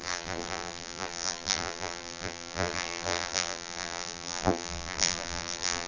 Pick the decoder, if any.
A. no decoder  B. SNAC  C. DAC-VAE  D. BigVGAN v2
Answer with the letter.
D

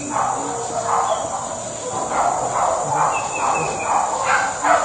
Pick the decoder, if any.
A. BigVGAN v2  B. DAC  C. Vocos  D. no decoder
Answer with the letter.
D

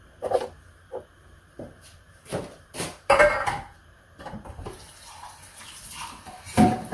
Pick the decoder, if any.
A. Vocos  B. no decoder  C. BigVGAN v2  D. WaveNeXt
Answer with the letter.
C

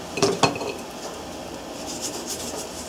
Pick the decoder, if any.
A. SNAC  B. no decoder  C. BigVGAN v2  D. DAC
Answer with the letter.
B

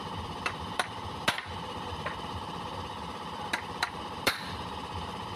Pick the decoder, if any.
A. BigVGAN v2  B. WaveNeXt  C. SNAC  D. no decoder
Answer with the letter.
A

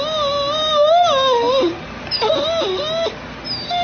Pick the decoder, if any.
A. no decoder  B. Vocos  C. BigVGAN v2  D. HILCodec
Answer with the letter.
A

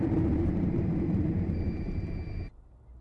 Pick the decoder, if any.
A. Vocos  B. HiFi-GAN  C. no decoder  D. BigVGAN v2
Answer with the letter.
D